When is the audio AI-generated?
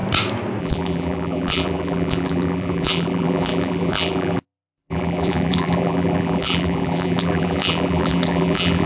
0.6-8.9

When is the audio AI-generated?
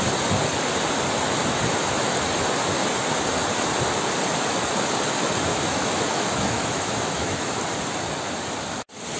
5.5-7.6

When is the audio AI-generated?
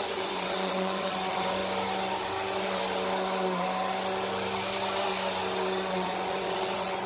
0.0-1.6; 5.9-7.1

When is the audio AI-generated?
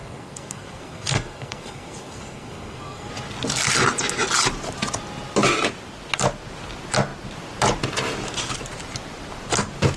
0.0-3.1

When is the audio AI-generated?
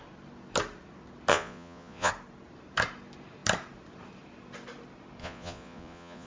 1.3-2.1; 5.2-6.3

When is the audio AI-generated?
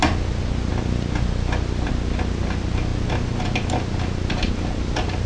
0.7-1.9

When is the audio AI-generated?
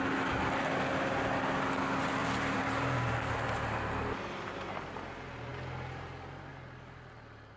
2.2-3.3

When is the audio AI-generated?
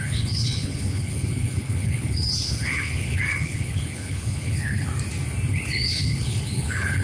0.0-4.9; 5.5-7.0